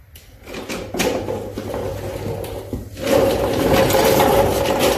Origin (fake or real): real